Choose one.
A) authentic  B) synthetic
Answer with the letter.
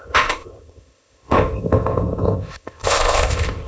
B